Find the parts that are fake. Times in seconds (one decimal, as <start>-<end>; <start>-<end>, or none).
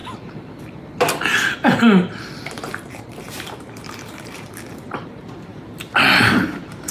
2.5-5.5; 6.1-6.9